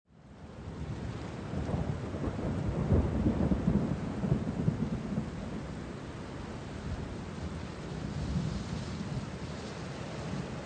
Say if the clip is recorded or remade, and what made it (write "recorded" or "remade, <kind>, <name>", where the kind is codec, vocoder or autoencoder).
recorded